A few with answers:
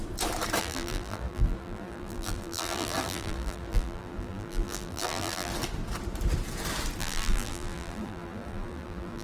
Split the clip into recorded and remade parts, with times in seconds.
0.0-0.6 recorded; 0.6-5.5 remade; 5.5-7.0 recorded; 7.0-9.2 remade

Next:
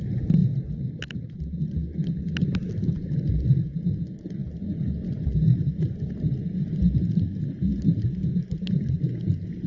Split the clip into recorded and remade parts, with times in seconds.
0.0-9.7 recorded

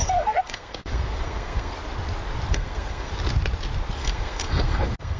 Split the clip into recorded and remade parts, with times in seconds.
0.0-1.7 remade; 1.7-2.5 recorded; 2.5-3.1 remade; 3.1-4.0 recorded; 4.0-5.2 remade

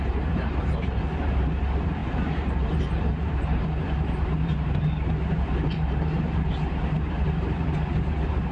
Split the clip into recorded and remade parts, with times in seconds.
0.0-8.5 remade

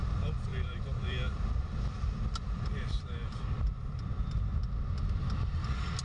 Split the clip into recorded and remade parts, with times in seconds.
0.0-0.5 recorded; 0.5-4.1 remade; 4.1-6.0 recorded